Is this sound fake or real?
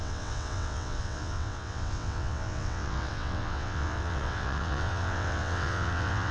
fake